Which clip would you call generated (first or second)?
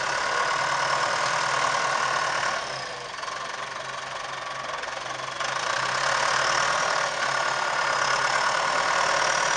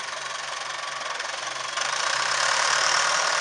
second